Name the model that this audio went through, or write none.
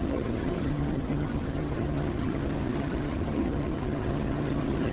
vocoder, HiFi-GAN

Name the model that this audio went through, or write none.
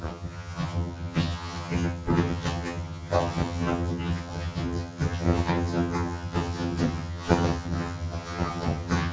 vocoder, HiFi-GAN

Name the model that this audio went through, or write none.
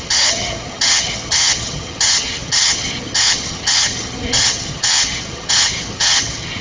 vocoder, HiFi-GAN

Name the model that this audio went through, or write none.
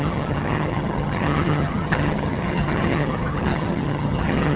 vocoder, HiFi-GAN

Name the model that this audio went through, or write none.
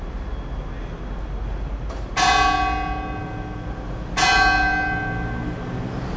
none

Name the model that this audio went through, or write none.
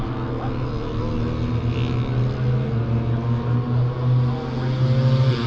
none